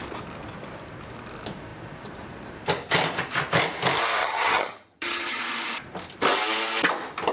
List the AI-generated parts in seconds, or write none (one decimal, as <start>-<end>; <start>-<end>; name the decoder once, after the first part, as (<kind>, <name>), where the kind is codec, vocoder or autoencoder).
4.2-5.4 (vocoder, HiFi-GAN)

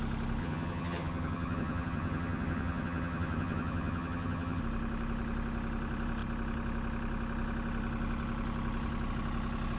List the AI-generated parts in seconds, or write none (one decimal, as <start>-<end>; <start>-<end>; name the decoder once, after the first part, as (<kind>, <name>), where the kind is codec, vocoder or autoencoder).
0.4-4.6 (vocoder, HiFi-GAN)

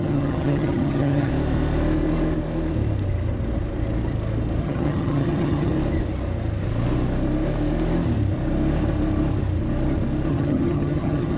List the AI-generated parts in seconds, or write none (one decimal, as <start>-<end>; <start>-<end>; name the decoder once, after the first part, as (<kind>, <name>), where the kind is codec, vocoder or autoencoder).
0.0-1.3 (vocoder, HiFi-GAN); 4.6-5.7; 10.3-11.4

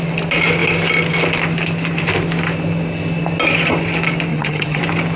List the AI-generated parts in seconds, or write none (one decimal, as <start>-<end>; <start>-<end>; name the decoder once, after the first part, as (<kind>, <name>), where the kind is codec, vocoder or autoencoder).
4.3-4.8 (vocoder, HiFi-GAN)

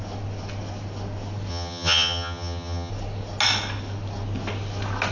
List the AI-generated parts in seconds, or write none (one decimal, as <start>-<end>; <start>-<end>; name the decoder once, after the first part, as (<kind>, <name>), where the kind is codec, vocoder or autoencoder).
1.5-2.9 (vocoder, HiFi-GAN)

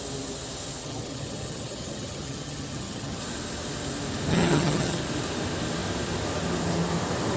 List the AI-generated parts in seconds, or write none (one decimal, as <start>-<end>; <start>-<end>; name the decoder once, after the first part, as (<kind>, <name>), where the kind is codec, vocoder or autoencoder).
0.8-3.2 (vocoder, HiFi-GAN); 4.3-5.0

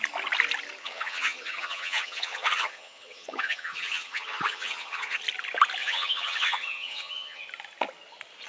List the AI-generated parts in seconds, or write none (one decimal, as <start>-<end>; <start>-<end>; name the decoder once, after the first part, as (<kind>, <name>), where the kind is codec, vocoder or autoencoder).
0.8-5.2 (vocoder, HiFi-GAN); 5.8-7.4